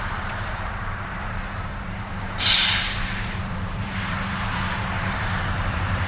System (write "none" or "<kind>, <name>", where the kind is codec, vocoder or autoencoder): vocoder, BigVGAN v2